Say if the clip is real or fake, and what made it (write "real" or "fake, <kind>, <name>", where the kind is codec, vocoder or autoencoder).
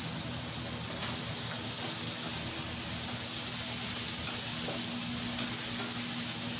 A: real